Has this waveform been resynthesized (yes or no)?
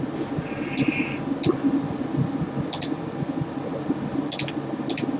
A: no